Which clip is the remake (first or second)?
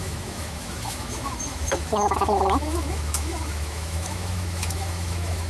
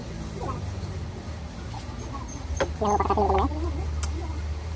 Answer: first